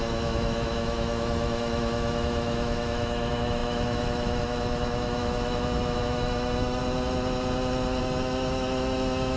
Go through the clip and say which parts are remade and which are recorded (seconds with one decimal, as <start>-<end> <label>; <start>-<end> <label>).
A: 0.0-6.8 remade; 6.8-8.0 recorded; 8.0-9.4 remade